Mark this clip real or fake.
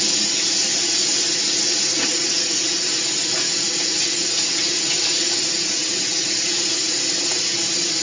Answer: real